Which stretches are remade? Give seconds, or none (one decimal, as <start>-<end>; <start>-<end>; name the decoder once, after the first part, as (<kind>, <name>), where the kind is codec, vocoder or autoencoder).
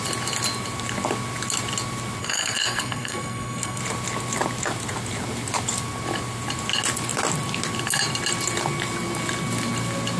2.2-3.8 (codec, SNAC)